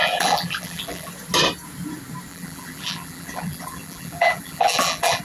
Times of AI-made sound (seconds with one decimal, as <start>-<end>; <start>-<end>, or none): 0.0-1.1; 2.3-5.2